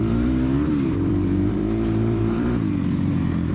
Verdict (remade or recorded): remade